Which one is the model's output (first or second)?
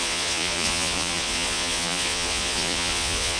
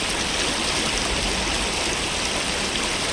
first